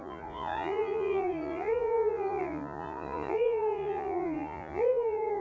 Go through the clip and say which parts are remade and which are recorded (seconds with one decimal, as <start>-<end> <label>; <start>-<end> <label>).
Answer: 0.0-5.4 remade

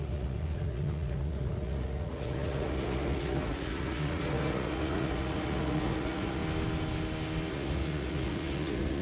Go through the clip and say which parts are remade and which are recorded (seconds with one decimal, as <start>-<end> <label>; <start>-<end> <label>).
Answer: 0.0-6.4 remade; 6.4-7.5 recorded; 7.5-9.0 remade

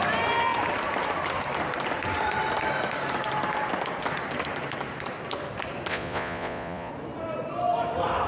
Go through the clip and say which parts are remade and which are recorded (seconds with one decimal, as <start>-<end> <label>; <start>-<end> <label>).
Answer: 0.0-5.9 recorded; 5.9-6.9 remade; 6.9-8.3 recorded